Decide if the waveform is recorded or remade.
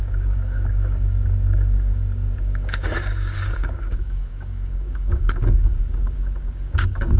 remade